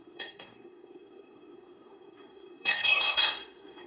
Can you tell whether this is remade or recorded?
remade